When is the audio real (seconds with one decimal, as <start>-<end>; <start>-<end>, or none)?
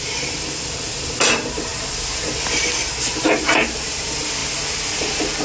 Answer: 0.0-5.4